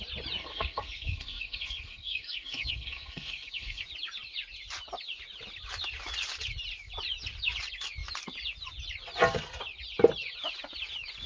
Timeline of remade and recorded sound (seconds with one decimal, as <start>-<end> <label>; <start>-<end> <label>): 0.0-0.4 recorded; 0.4-3.8 remade; 3.8-11.3 recorded